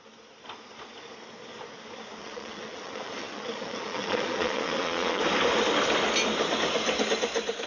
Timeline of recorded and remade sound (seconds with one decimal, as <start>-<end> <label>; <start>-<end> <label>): 0.0-2.2 recorded; 2.2-5.2 remade; 5.2-7.7 recorded